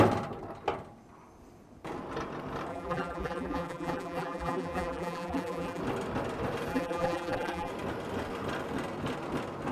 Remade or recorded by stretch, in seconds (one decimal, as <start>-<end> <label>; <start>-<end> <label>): 0.0-2.7 recorded; 2.7-5.8 remade; 5.8-6.7 recorded; 6.7-7.7 remade; 7.7-9.7 recorded